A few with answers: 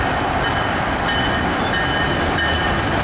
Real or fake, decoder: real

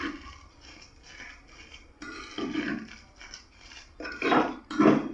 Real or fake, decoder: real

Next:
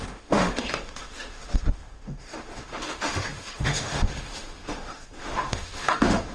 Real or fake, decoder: fake, autoencoder, DAC-VAE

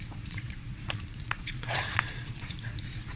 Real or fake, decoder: fake, vocoder, Vocos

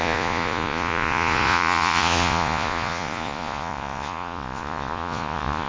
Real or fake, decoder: fake, vocoder, Vocos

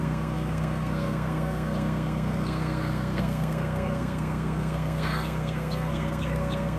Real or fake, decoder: fake, codec, SNAC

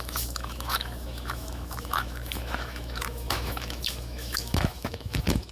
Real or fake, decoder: fake, autoencoder, DAC-VAE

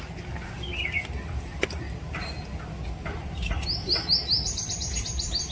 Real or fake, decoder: real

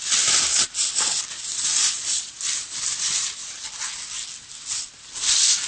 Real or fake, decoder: real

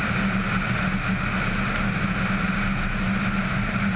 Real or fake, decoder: real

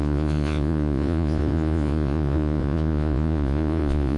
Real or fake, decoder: fake, vocoder, Vocos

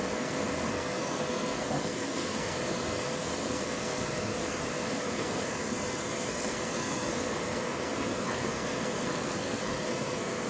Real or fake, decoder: fake, codec, SNAC